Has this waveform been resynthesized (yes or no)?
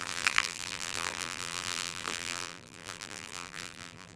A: yes